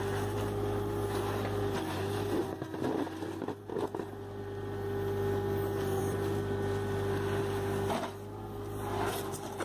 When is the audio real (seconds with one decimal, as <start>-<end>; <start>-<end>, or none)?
0.0-6.0; 7.4-9.6